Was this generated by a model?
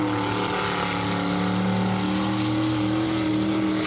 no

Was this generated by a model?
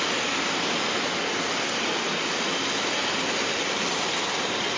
no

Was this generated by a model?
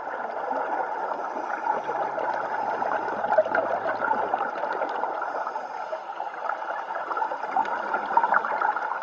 no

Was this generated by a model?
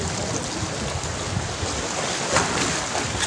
no